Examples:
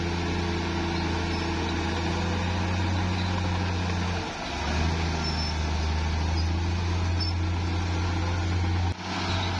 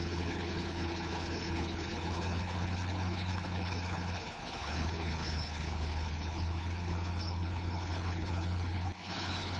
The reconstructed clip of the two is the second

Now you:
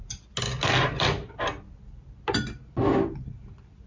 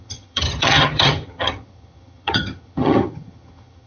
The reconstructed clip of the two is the second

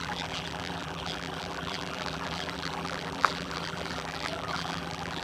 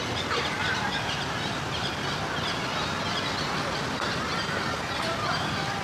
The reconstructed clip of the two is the first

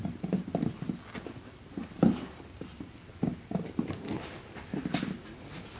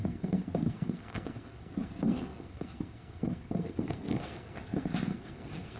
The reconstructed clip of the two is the second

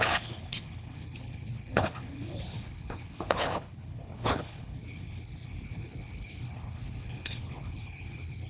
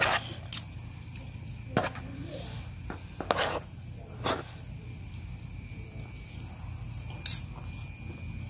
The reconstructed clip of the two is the first